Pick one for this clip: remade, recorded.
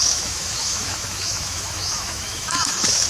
remade